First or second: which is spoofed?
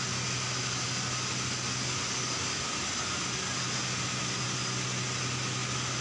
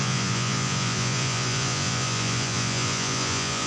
second